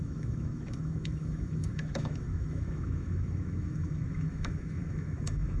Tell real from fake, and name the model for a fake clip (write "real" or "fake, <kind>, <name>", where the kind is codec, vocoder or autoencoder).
fake, autoencoder, DAC-VAE